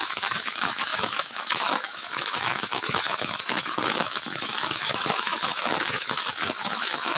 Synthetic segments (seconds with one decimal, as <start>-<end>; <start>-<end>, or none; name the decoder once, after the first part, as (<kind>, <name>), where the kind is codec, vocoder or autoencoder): 0.0-7.2 (autoencoder, DAC-VAE)